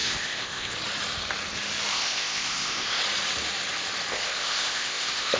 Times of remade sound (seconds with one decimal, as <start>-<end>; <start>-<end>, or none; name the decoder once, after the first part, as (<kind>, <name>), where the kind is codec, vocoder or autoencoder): 0.0-0.7 (codec, ZipCodec); 1.9-3.0; 4.1-5.4